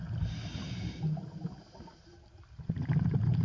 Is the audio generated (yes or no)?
no